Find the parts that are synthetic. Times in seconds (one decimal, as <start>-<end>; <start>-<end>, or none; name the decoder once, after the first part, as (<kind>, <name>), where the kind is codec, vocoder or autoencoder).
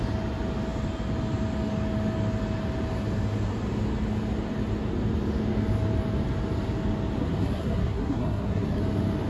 7.2-8.8 (codec, SNAC)